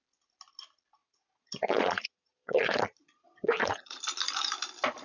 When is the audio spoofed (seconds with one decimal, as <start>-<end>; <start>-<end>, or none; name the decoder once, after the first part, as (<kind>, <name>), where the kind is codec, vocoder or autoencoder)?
1.0-4.0 (vocoder, Vocos)